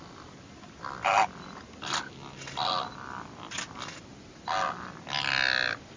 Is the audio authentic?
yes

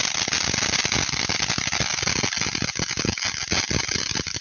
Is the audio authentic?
yes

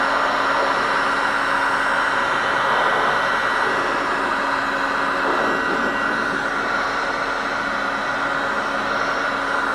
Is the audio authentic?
yes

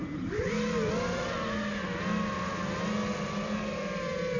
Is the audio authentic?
yes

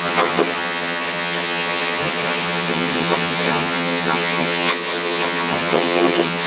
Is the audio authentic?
no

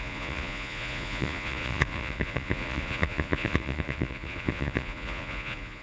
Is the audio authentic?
no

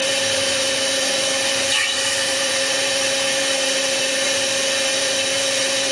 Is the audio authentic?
no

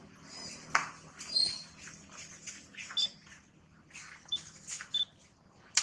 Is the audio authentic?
yes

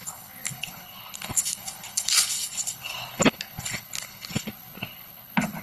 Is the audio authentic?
no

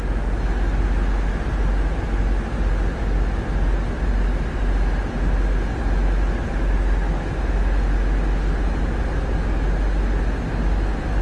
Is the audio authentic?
yes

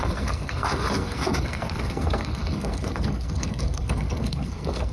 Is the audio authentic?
no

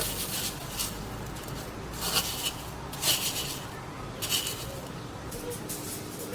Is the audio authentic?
yes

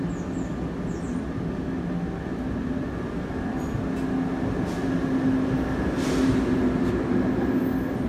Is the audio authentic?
yes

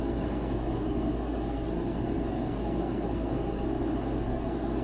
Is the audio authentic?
no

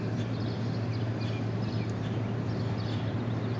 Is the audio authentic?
yes